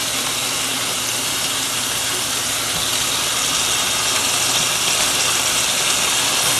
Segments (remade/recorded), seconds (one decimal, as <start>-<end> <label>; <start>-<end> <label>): 0.0-6.6 recorded